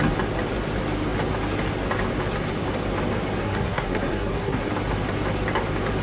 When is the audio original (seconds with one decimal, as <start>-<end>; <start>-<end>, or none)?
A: 0.0-3.4; 4.7-6.0